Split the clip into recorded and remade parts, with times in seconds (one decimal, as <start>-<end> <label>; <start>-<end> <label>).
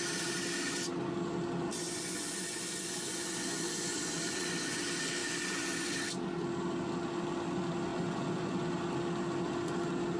0.0-1.7 recorded; 1.7-4.8 remade; 4.8-5.2 recorded; 5.2-5.9 remade; 5.9-7.9 recorded; 7.9-8.7 remade; 8.7-10.2 recorded